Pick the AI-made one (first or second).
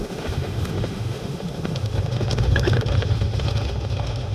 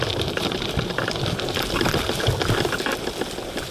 first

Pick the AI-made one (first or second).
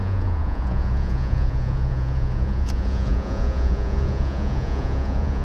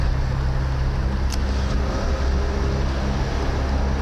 first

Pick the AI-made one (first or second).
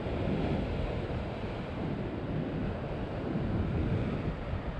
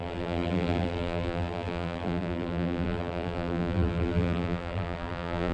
second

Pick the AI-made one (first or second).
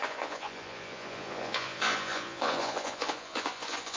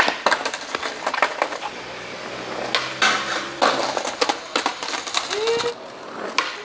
first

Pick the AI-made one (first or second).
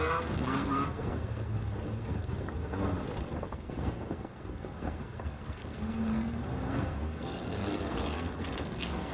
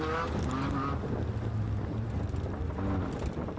first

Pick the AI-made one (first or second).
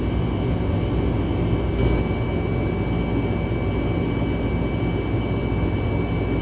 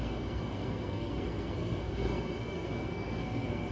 second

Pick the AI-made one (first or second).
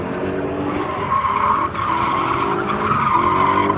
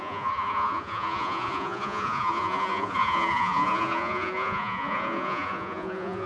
second